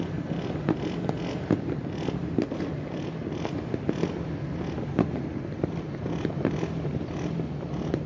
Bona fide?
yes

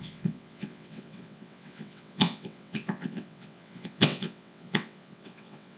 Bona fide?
no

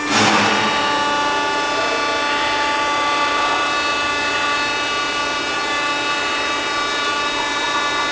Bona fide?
yes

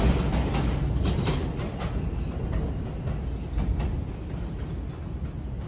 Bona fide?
yes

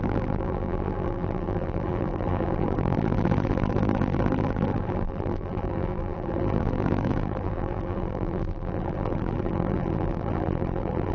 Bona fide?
no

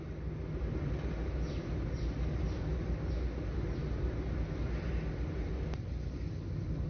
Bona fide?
yes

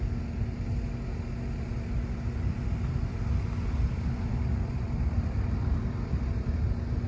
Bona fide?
yes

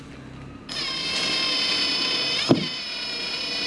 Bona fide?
yes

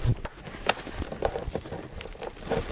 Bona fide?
yes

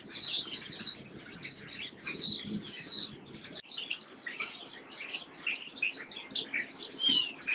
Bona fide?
yes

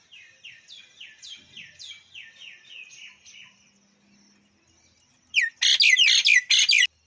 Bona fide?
yes